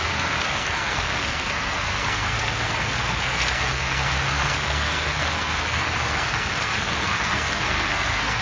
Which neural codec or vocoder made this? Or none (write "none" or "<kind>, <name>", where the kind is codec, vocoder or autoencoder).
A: codec, SNAC